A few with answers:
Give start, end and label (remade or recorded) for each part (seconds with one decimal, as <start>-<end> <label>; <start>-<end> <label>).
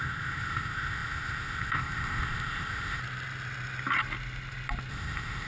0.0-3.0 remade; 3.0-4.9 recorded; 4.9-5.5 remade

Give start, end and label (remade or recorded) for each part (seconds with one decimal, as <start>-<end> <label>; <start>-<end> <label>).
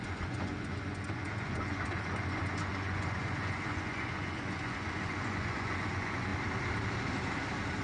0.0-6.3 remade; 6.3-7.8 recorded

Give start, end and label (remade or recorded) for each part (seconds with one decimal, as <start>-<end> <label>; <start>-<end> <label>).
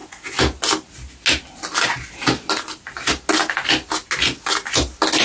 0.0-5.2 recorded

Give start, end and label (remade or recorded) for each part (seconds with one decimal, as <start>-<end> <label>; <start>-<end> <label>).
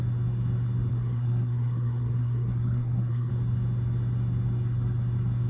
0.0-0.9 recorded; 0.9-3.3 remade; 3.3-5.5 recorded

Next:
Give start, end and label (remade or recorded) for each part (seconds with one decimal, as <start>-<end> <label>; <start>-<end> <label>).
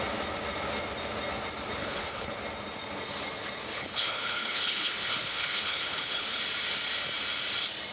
0.0-1.8 recorded; 1.8-2.3 remade; 2.3-3.7 recorded; 3.7-6.4 remade; 6.4-7.9 recorded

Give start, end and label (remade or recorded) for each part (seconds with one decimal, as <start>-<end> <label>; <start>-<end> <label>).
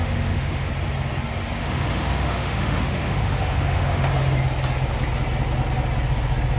0.0-0.7 remade; 0.7-1.6 recorded; 1.6-4.1 remade; 4.1-6.6 recorded